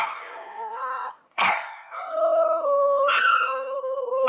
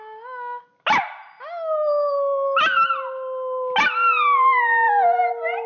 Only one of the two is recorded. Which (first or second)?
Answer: second